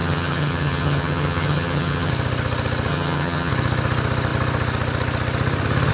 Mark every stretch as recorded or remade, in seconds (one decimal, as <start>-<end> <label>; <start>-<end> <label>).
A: 0.0-2.1 remade; 2.1-2.9 recorded; 2.9-3.5 remade; 3.5-5.9 recorded